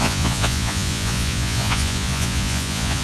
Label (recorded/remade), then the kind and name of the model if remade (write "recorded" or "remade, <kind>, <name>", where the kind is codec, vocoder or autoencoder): remade, vocoder, Vocos